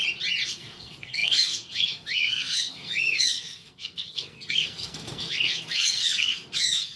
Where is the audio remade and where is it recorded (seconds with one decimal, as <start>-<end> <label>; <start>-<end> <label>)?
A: 0.0-0.5 recorded; 0.5-7.0 remade